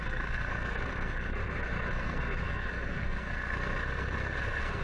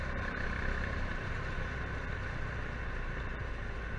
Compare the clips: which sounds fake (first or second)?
first